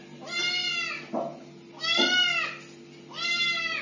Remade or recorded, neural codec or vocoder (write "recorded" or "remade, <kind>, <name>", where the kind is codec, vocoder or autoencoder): recorded